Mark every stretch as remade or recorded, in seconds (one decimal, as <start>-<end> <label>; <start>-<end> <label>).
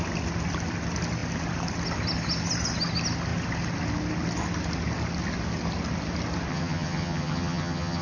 0.0-6.5 recorded; 6.5-8.0 remade